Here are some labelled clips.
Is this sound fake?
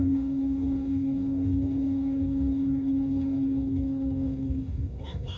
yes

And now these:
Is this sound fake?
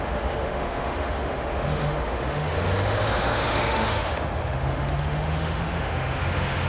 yes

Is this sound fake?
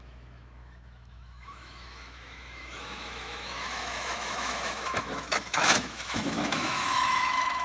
yes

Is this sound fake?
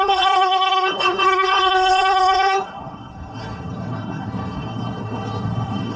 yes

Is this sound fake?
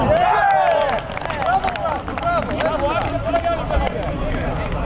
no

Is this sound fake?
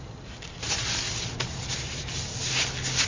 no